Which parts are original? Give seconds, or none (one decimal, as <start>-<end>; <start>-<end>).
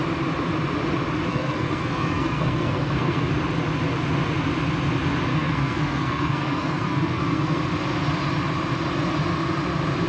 0.0-1.3; 3.3-5.3; 7.6-10.1